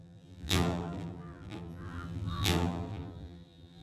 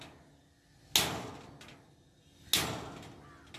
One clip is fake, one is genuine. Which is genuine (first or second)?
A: second